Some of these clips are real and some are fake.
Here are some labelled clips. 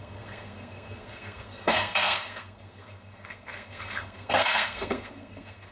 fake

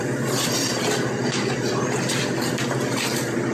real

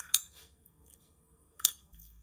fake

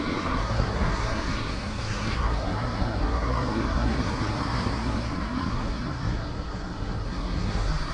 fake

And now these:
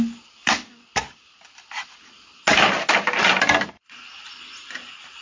real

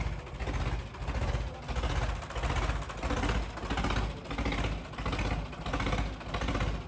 real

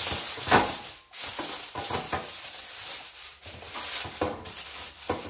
real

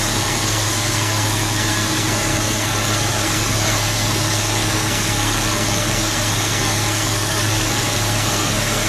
fake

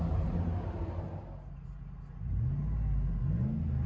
real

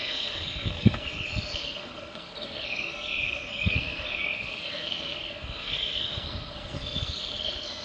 fake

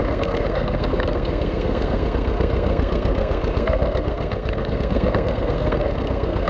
fake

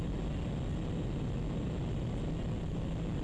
real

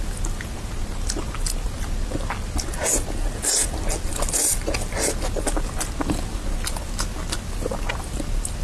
real